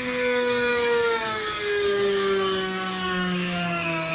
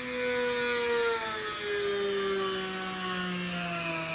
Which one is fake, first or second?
first